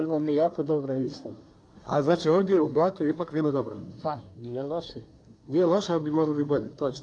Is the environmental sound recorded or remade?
remade